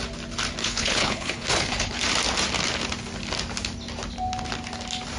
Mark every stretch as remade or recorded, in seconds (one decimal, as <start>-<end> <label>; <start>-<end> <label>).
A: 0.0-0.6 recorded; 0.6-2.0 remade; 2.0-5.2 recorded